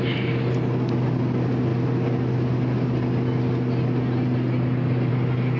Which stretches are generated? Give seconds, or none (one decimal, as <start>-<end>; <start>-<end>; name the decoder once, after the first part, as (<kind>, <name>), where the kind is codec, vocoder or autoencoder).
none